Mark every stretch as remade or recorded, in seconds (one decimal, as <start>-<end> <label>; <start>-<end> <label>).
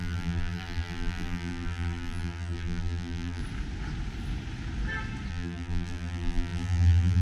0.0-3.4 remade; 3.4-5.3 recorded; 5.3-7.2 remade